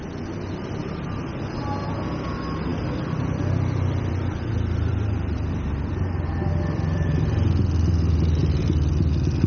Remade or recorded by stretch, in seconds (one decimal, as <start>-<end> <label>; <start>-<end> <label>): 0.0-2.7 recorded; 2.7-5.5 remade; 5.5-8.4 recorded; 8.4-8.9 remade; 8.9-9.5 recorded